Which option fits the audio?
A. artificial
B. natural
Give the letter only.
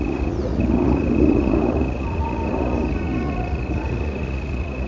A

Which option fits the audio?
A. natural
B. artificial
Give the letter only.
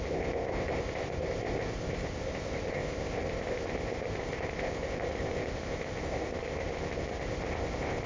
B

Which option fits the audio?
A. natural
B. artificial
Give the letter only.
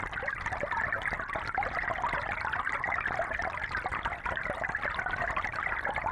A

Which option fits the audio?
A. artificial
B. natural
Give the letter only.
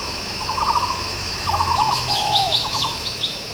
A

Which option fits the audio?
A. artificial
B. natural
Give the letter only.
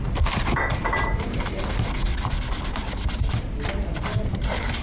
B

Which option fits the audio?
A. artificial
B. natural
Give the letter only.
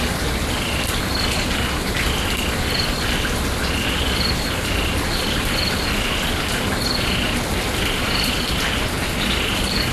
B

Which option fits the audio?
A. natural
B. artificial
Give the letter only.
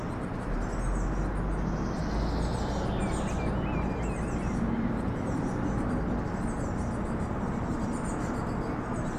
A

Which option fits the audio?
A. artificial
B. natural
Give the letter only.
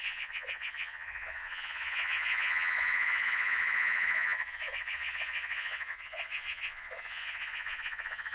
A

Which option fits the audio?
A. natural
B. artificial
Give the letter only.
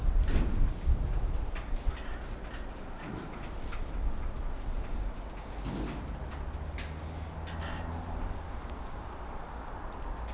A